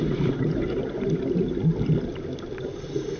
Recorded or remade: recorded